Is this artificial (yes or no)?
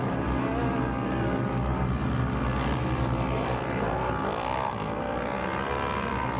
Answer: no